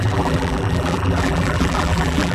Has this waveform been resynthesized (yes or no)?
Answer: yes